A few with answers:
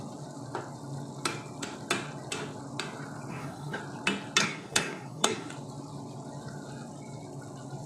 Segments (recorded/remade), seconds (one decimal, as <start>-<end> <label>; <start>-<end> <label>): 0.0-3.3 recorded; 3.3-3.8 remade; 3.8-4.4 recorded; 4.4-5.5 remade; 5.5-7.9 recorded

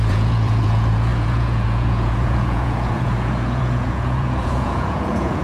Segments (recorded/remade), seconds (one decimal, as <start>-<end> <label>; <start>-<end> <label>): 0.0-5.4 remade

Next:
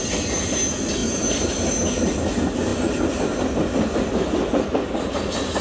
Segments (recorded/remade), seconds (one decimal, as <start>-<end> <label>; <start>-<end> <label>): 0.0-5.6 recorded

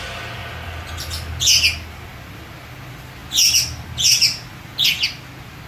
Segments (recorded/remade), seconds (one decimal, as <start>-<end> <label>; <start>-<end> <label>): 0.0-5.7 recorded

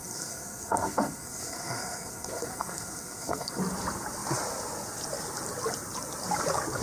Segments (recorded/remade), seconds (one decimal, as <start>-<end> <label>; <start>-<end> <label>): 0.0-3.6 remade; 3.6-6.8 recorded

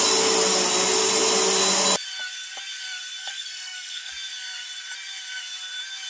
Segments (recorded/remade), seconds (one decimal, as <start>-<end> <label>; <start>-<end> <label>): 0.0-3.2 recorded; 3.2-4.1 remade; 4.1-6.1 recorded

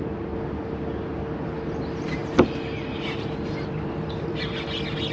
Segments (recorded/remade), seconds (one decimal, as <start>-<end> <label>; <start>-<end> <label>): 0.0-5.1 recorded